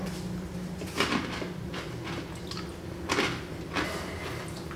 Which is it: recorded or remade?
recorded